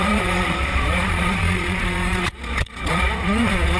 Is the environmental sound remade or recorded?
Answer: remade